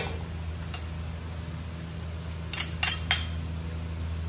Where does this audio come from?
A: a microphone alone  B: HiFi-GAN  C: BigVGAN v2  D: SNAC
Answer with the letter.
A